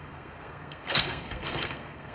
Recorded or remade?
remade